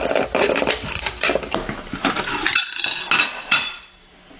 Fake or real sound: real